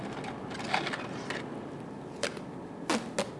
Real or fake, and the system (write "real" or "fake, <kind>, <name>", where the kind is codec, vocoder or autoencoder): real